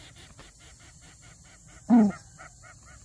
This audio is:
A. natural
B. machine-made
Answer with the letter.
A